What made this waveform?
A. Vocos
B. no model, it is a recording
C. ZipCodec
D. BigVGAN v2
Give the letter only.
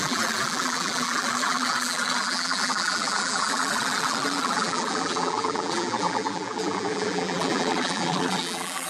D